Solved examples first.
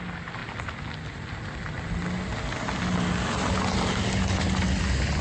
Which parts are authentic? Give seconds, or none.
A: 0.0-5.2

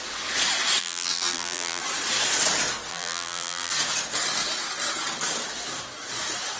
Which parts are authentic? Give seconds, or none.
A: 0.0-0.8; 1.8-2.9; 3.7-6.6

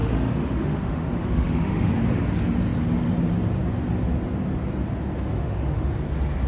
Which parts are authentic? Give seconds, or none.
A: 1.9-5.1; 5.9-6.5

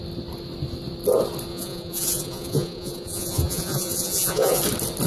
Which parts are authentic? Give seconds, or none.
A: 0.0-1.5; 4.6-5.1

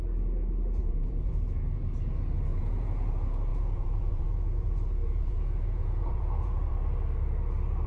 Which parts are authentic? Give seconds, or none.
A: 0.0-0.8; 1.8-2.5; 3.1-3.5; 6.7-7.9